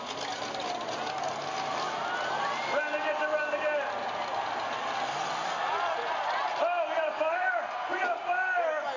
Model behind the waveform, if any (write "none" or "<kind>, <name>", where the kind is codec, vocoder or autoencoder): none